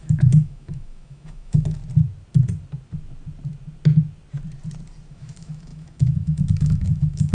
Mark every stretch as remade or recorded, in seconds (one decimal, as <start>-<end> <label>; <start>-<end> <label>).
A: 0.0-1.8 remade; 1.8-5.1 recorded; 5.1-7.3 remade